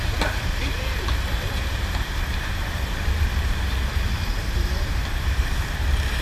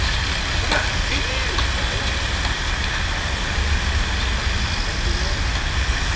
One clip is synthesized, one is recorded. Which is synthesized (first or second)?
first